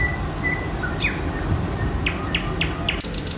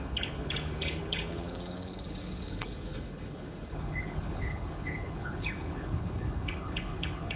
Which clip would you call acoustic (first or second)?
first